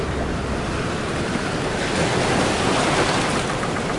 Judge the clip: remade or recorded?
recorded